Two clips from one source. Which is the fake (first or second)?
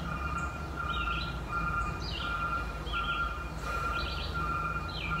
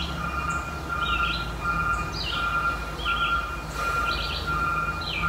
first